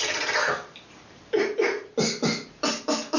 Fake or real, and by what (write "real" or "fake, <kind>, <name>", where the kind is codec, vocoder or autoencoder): real